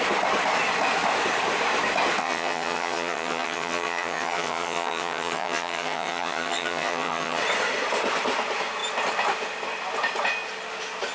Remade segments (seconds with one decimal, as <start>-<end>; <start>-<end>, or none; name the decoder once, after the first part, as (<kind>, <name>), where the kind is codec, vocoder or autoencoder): 2.2-7.4 (vocoder, HiFi-GAN)